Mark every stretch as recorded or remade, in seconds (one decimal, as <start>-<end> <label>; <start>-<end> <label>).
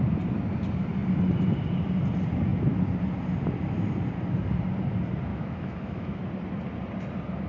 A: 0.0-5.3 recorded; 5.3-6.2 remade; 6.2-7.5 recorded